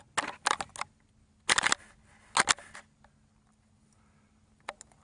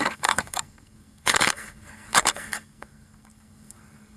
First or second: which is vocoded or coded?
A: second